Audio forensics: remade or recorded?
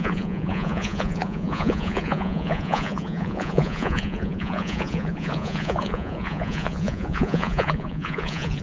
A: remade